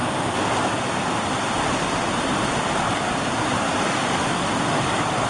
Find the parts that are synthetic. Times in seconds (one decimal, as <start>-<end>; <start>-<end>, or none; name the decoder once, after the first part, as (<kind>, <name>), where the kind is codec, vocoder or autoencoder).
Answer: none